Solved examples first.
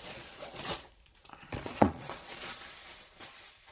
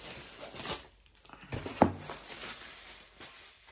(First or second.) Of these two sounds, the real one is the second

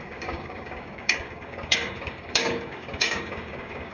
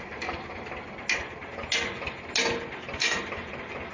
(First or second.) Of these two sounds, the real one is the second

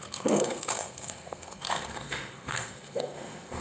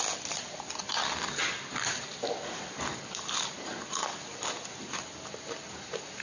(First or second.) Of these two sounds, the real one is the second